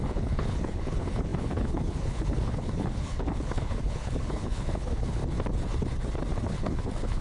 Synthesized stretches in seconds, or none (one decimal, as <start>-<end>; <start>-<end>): 0.0-5.2; 6.5-7.2